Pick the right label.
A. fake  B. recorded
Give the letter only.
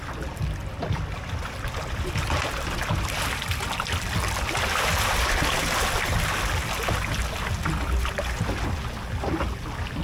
B